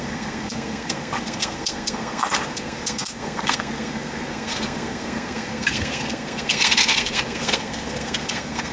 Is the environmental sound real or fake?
fake